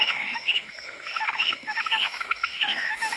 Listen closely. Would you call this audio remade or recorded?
remade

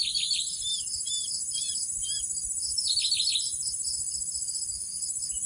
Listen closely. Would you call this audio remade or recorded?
recorded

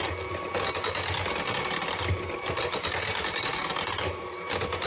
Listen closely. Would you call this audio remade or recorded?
recorded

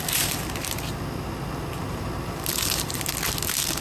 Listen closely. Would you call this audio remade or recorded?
recorded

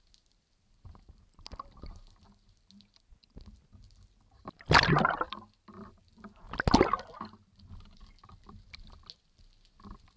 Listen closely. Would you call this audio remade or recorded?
recorded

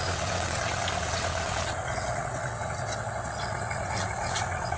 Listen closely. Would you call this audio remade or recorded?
remade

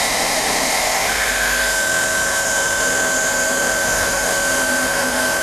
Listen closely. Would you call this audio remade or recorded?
remade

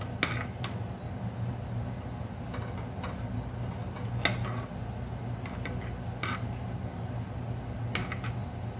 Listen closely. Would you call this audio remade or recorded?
recorded